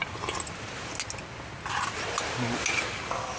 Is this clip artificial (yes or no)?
no